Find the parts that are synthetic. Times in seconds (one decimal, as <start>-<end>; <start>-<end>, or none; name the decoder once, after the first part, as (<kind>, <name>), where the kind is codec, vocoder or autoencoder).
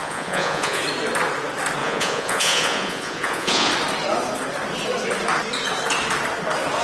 0.0-0.8 (vocoder, Vocos); 1.8-3.7